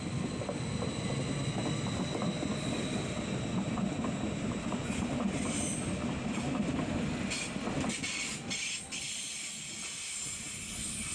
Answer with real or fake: real